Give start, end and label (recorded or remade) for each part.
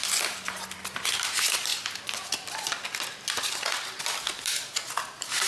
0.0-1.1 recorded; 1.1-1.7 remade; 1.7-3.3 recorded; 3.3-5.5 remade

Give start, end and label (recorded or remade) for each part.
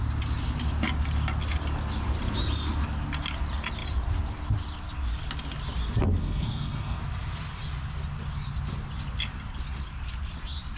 0.0-6.2 recorded; 6.2-7.0 remade; 7.0-10.8 recorded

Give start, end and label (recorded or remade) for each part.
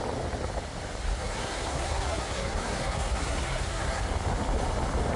0.0-1.2 recorded; 1.2-4.0 remade; 4.0-5.2 recorded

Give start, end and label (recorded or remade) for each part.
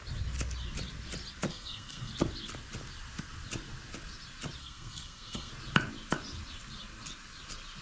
0.0-1.5 recorded; 1.5-2.1 remade; 2.1-4.6 recorded; 4.6-5.5 remade; 5.5-7.8 recorded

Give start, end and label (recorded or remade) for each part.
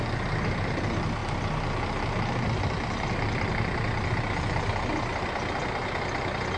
0.0-6.6 recorded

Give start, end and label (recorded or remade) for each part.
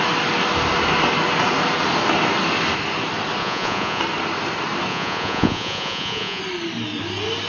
0.0-3.4 recorded; 3.4-4.0 remade; 4.0-4.9 recorded; 4.9-6.4 remade; 6.4-7.5 recorded